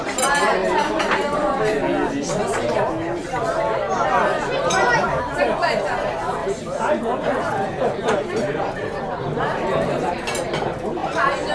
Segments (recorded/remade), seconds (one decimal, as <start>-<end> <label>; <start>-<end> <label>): 0.0-6.4 recorded; 6.4-9.0 remade; 9.0-11.0 recorded; 11.0-11.5 remade